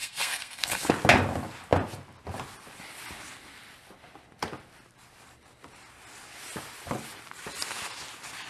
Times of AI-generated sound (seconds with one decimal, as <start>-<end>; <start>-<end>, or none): 0.0-0.9